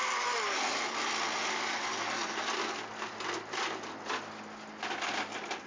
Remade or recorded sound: recorded